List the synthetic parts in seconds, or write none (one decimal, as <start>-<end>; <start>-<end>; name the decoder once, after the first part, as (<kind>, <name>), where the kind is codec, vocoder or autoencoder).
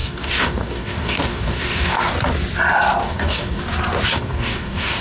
0.0-2.0 (codec, DAC); 3.0-3.6; 4.1-5.0